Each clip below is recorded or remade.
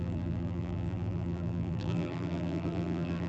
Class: remade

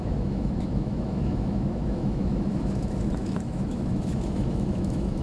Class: remade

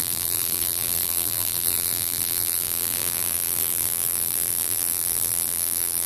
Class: remade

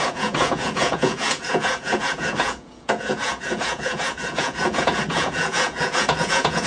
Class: remade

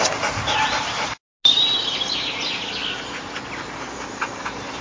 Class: recorded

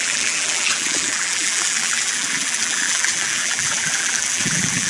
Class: remade